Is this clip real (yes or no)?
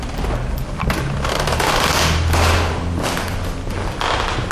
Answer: yes